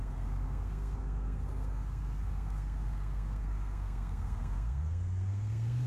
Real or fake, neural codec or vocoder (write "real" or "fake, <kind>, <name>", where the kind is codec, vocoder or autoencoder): fake, codec, SNAC